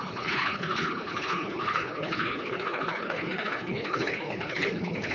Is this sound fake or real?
fake